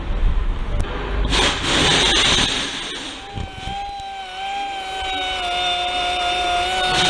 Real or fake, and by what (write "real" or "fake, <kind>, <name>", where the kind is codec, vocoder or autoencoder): real